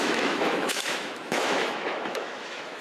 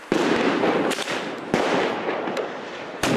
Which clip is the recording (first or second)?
second